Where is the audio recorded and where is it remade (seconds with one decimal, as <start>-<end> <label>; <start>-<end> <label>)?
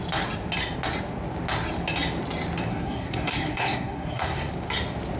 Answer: 0.0-2.7 recorded; 2.7-4.5 remade; 4.5-5.2 recorded